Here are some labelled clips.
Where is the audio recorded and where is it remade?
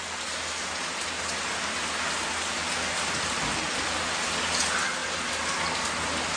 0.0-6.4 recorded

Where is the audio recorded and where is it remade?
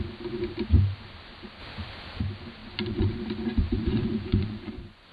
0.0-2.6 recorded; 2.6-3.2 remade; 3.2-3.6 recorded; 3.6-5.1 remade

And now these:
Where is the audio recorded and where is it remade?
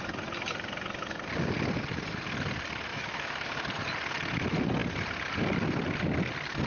0.0-2.9 recorded; 2.9-3.6 remade; 3.6-6.7 recorded